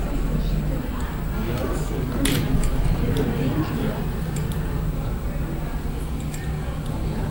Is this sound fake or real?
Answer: real